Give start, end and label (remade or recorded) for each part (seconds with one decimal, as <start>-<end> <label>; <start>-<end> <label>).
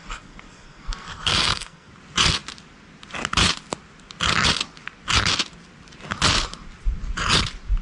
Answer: 0.0-1.9 remade; 1.9-7.8 recorded